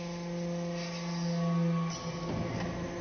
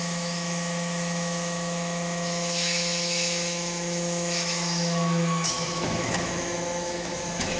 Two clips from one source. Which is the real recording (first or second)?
first